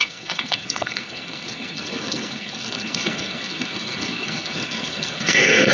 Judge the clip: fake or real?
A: fake